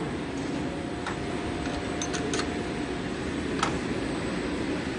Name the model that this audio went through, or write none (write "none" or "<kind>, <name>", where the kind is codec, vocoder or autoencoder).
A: none